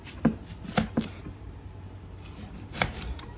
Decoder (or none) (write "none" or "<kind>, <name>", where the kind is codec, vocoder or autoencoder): none